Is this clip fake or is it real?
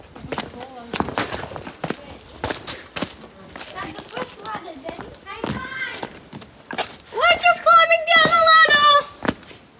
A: real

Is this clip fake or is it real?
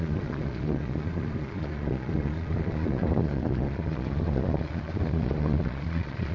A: fake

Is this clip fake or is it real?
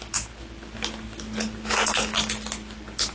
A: real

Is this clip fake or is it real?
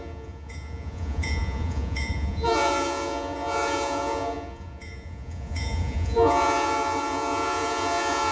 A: fake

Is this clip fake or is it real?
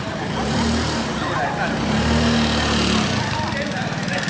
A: real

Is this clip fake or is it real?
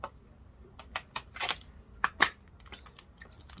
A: real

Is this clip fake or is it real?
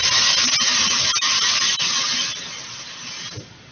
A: real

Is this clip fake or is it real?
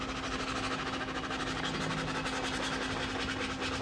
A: real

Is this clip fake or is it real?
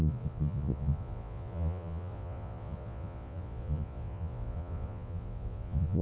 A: fake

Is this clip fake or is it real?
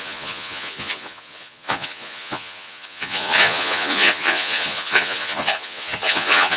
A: fake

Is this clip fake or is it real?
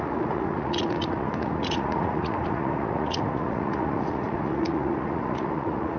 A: fake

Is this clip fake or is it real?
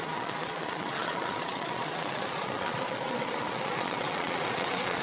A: fake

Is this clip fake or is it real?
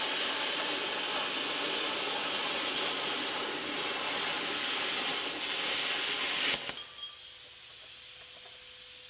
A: real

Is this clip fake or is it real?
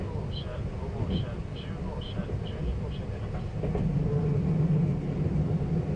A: real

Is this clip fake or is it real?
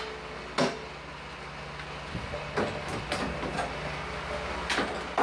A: real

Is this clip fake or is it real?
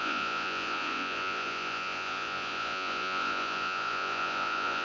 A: fake